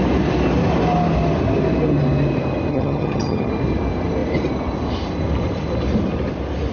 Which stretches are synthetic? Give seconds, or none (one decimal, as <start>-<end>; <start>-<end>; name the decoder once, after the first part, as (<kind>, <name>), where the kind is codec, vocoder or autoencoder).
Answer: 2.7-3.5 (vocoder, HiFi-GAN)